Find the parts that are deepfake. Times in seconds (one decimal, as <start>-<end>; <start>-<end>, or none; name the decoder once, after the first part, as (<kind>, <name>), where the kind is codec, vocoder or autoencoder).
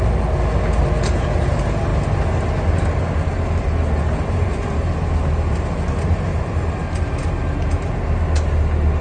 none